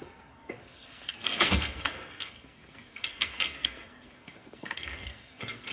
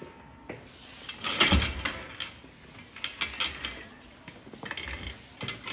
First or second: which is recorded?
second